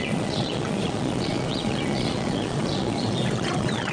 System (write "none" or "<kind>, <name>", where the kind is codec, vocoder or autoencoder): vocoder, Vocos